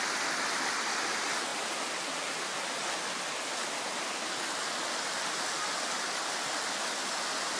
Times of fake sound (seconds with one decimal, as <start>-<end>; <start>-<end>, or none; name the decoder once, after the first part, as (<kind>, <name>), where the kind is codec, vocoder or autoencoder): none